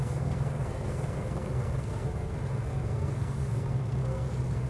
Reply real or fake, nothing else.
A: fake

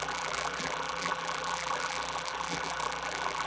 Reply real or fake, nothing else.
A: fake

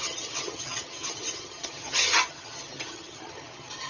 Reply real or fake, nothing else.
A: fake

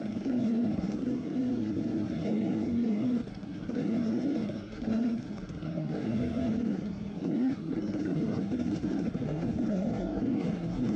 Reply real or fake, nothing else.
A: fake